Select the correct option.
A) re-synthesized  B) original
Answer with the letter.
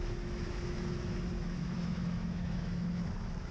A